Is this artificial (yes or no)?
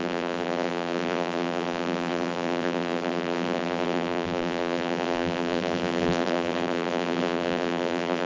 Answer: yes